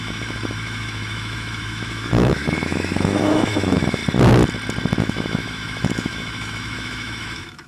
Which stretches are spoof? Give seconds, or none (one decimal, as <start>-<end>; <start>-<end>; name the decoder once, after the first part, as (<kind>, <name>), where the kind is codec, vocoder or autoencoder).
0.0-4.0 (autoencoder, DAC-VAE); 5.0-7.7